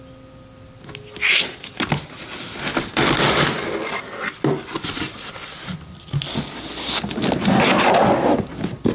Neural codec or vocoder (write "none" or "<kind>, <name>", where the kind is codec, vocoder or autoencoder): none